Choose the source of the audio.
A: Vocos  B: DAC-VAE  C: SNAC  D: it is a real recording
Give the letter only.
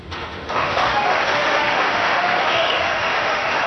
B